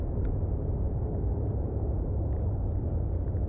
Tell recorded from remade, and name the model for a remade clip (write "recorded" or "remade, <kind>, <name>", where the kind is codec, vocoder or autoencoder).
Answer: remade, vocoder, BigVGAN v2